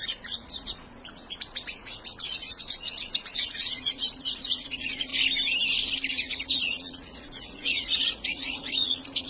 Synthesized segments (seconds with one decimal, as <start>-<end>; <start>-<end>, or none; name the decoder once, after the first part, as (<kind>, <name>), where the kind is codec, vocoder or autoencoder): 0.0-5.1 (vocoder, Vocos); 6.1-9.3